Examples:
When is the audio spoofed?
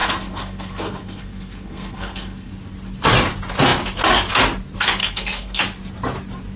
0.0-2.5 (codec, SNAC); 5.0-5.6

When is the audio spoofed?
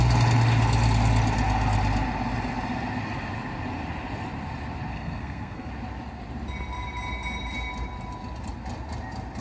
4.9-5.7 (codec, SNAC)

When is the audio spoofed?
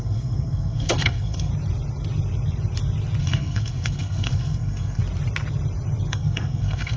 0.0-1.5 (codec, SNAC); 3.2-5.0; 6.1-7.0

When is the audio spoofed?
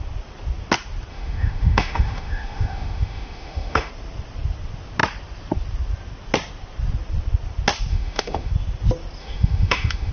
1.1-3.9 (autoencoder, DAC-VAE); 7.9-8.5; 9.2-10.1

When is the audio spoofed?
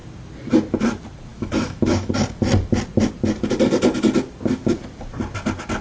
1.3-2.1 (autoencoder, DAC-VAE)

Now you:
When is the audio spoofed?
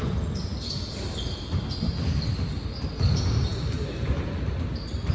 none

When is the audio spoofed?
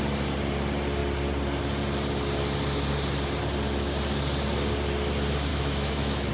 5.5-6.3 (autoencoder, DAC-VAE)